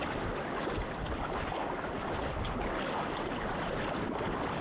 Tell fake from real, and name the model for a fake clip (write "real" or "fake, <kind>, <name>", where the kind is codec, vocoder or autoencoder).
real